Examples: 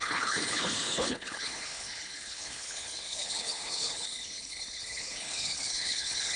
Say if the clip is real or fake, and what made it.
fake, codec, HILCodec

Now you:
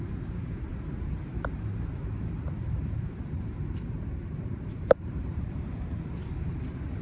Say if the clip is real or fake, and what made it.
fake, vocoder, BigVGAN v2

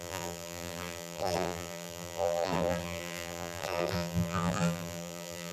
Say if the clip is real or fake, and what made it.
fake, vocoder, BigVGAN v2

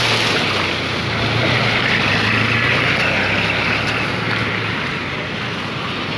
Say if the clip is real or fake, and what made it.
real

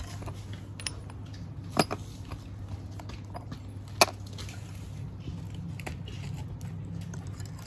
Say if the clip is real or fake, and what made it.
real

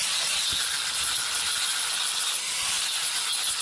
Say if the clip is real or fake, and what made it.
real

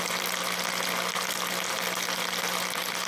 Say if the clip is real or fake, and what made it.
real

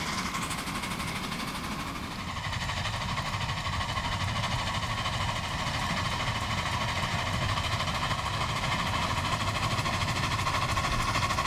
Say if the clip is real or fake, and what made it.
real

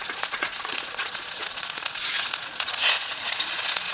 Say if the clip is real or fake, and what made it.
fake, vocoder, Vocos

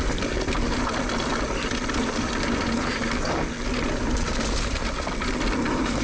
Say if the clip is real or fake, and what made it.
real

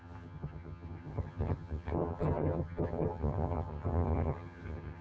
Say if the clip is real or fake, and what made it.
fake, vocoder, HiFi-GAN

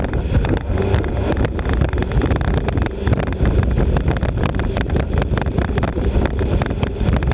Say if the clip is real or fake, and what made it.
fake, vocoder, BigVGAN v2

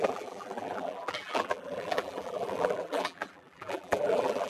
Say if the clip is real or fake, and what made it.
fake, vocoder, BigVGAN v2